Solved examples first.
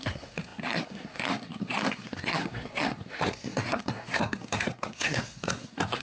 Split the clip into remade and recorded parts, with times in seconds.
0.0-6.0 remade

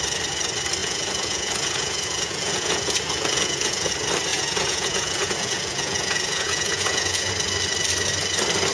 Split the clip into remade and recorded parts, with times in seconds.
0.0-0.8 recorded; 0.8-3.9 remade; 3.9-4.3 recorded; 4.3-7.3 remade; 7.3-8.7 recorded